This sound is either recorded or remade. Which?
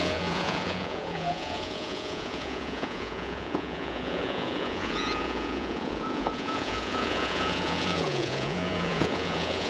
remade